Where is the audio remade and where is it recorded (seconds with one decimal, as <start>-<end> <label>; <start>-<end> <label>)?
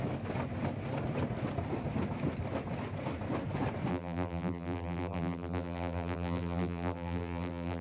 0.0-3.9 recorded; 3.9-7.8 remade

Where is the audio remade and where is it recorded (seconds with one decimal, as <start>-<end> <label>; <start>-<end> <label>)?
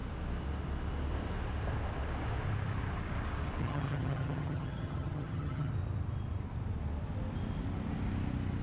0.0-3.6 recorded; 3.6-5.7 remade; 5.7-8.6 recorded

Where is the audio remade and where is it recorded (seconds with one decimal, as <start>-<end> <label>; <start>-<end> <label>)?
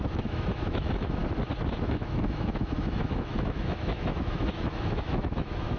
0.0-1.2 remade; 1.2-1.8 recorded; 1.8-5.8 remade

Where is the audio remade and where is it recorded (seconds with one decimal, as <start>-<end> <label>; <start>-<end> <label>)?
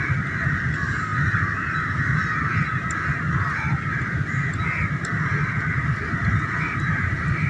0.0-1.1 remade; 1.1-3.9 recorded; 3.9-7.5 remade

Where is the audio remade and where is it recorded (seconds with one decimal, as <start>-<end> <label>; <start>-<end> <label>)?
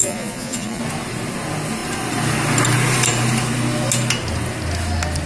0.0-0.8 remade; 0.8-5.3 recorded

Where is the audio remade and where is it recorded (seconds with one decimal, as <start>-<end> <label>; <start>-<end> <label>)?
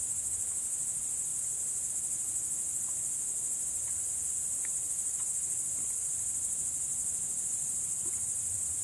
0.0-8.8 recorded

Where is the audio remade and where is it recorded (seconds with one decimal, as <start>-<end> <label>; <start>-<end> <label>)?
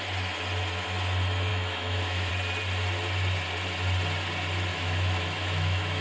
0.0-1.5 recorded; 1.5-2.3 remade; 2.3-4.7 recorded; 4.7-6.0 remade